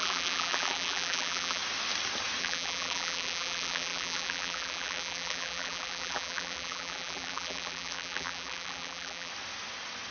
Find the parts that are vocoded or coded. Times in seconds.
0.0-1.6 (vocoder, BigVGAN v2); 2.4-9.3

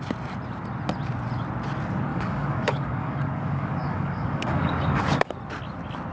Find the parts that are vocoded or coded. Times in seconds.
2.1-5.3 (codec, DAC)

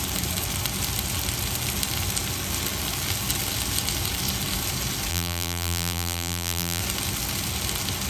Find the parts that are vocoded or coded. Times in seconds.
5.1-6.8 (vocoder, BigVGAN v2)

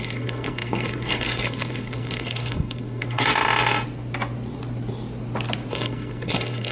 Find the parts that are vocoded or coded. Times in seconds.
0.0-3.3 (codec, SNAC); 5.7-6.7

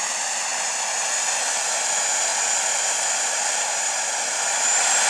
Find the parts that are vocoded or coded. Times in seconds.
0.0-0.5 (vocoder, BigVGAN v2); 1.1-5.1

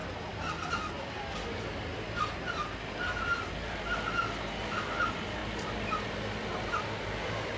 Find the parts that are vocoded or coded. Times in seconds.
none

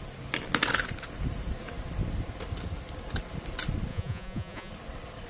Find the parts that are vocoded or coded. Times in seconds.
3.9-4.7 (vocoder, Vocos)

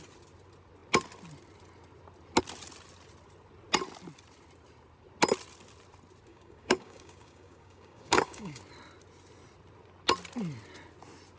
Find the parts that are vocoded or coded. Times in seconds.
6.3-8.6 (codec, DAC)